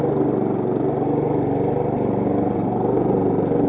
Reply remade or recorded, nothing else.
recorded